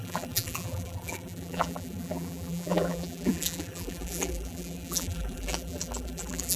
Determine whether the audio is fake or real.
fake